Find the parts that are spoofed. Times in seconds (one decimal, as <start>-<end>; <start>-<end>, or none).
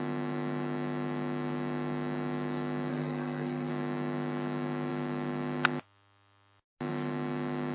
2.9-3.7